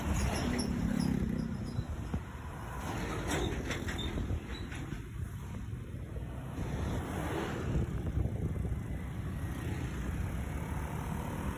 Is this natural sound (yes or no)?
yes